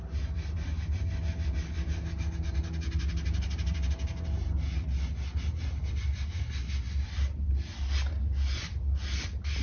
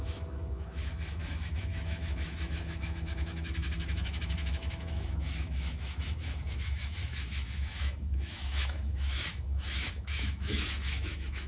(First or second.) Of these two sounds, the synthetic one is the second